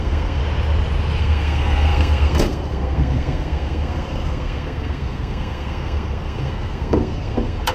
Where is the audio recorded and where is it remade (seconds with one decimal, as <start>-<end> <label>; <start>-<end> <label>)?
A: 0.0-0.4 remade; 0.4-1.2 recorded; 1.2-7.7 remade